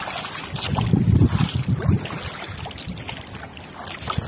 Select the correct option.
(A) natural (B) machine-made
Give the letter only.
A